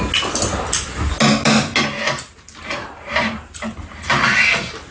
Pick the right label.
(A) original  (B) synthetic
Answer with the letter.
A